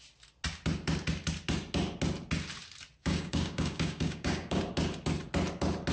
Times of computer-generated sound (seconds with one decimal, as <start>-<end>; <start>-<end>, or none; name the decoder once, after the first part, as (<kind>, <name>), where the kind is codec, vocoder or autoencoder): 3.0-4.6 (codec, DAC)